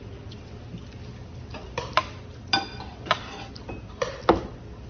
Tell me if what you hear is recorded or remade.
recorded